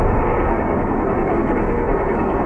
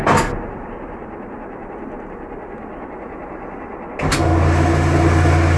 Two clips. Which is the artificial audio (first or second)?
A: first